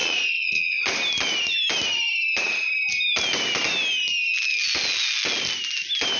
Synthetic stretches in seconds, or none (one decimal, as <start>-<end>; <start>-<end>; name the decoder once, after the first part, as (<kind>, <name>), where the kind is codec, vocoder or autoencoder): 0.0-0.8 (vocoder, Vocos)